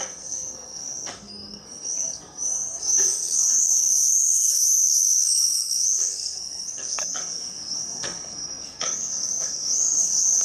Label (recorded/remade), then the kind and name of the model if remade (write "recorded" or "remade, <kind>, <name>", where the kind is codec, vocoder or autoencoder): remade, codec, SNAC